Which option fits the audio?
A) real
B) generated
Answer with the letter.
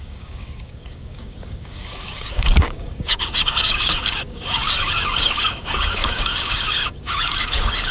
B